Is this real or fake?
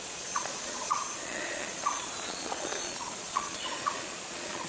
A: fake